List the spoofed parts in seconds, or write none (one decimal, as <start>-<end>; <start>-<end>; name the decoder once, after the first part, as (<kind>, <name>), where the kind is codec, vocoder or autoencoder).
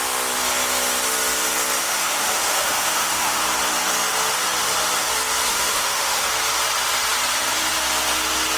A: 1.8-3.4 (autoencoder, DAC-VAE); 5.5-6.3